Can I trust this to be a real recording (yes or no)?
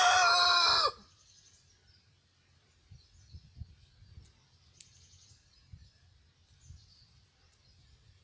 yes